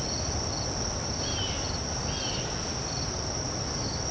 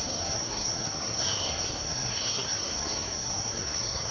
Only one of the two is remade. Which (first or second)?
second